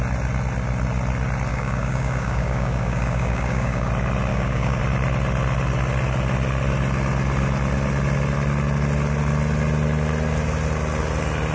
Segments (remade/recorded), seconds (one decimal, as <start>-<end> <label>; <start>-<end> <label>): 0.0-1.5 recorded; 1.5-3.9 remade; 3.9-4.3 recorded; 4.3-4.8 remade; 4.8-11.5 recorded